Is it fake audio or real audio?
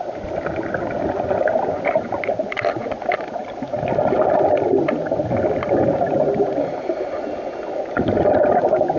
real